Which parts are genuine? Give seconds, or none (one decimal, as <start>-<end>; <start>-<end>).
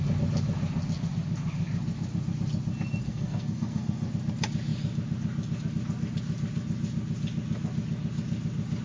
0.0-3.0; 4.1-8.8